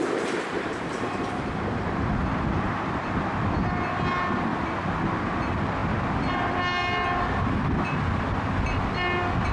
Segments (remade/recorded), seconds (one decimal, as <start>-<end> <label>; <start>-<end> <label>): 0.0-0.5 recorded; 0.5-2.1 remade; 2.1-9.5 recorded